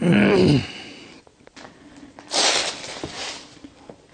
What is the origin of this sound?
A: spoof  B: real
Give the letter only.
B